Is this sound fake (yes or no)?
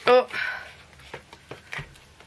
no